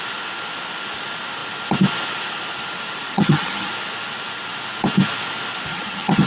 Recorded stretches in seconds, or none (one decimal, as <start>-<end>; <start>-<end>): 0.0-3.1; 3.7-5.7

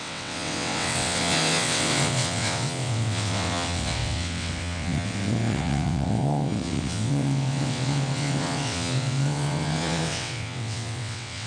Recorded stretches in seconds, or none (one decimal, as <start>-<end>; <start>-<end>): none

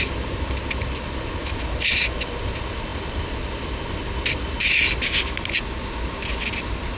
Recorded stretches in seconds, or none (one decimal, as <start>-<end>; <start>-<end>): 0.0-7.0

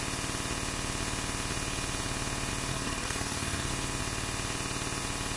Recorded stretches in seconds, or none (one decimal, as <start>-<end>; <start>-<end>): 0.0-2.7; 3.7-5.4

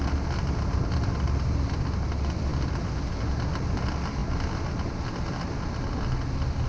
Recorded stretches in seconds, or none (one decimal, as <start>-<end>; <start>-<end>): 0.0-6.7